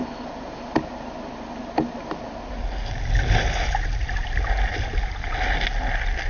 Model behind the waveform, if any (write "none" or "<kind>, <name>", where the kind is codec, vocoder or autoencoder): none